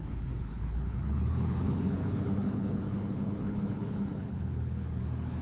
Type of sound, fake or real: fake